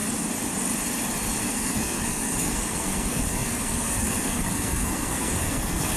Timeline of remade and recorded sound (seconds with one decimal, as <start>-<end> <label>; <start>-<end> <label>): 0.0-1.4 recorded; 1.4-6.0 remade